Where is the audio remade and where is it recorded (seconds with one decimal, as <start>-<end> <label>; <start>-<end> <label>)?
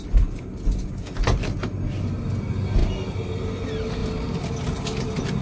0.0-5.4 recorded